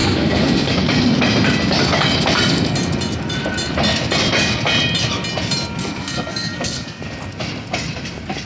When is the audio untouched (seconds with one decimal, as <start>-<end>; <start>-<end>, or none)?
0.9-5.8; 7.0-8.5